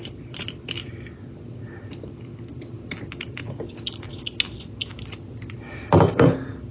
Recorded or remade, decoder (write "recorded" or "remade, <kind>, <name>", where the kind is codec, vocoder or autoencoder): recorded